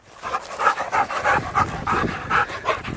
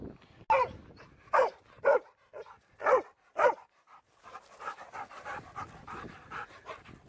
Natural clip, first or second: second